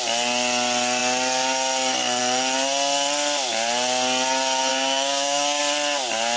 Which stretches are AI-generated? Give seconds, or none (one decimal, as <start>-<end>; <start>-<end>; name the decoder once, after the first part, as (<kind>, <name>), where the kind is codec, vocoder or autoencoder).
4.7-5.6 (codec, DAC)